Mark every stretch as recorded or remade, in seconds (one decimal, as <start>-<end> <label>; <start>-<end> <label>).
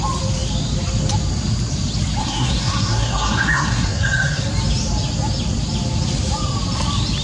0.0-2.2 recorded; 2.2-4.5 remade; 4.5-7.2 recorded